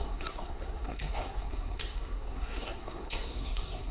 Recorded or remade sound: remade